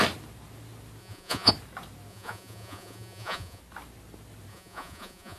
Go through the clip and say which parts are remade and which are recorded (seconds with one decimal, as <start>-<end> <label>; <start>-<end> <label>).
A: 0.0-1.0 recorded; 1.0-1.5 remade; 1.5-2.1 recorded; 2.1-3.6 remade; 3.6-4.5 recorded; 4.5-5.4 remade